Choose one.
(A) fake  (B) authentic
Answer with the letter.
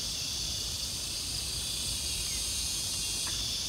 B